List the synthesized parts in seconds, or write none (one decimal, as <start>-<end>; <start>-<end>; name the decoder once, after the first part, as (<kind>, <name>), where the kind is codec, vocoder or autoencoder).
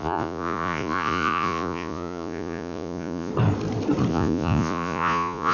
0.0-3.3 (vocoder, Vocos); 4.1-5.5